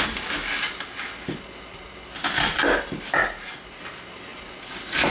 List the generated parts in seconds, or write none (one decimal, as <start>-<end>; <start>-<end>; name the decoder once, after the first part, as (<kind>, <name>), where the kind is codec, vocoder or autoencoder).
none